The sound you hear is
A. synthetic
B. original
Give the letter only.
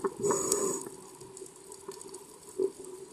B